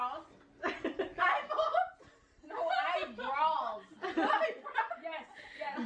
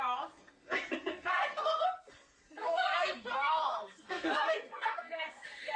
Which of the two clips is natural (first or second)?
first